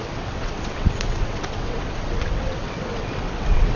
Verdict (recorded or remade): remade